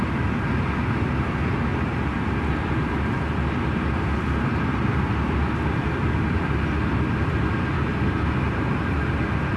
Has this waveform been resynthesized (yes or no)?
no